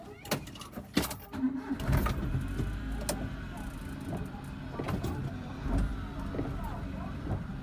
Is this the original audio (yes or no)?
yes